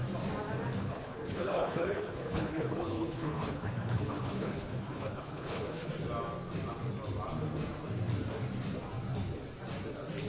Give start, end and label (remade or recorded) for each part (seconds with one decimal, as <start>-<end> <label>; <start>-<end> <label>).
0.0-0.8 recorded; 0.8-5.9 remade; 5.9-10.3 recorded